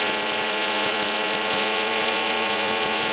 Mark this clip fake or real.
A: fake